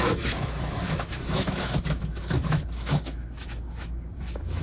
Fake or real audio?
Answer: fake